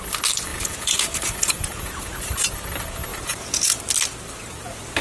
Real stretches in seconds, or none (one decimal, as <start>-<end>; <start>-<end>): 0.0-0.5; 2.2-3.1; 3.8-5.0